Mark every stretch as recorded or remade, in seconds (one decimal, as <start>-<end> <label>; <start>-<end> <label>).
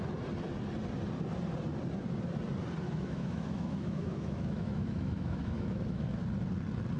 0.0-2.8 recorded; 2.8-6.2 remade; 6.2-7.0 recorded